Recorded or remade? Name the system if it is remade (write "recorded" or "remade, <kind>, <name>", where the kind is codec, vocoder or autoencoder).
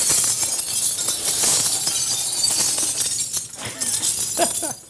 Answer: recorded